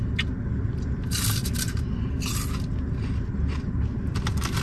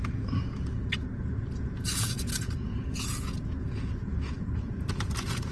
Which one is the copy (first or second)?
second